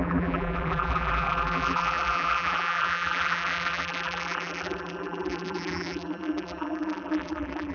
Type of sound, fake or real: fake